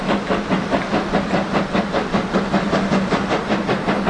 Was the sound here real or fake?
real